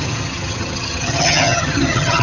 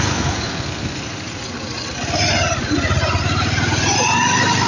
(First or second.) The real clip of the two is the second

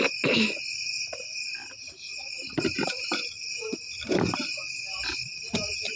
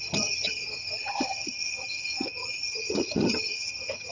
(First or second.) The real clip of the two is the first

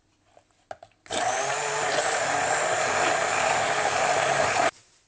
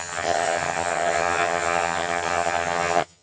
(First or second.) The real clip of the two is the first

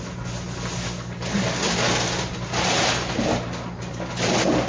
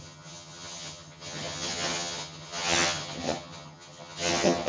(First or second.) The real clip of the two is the first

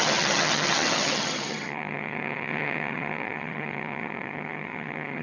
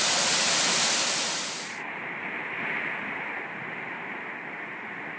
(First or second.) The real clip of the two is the second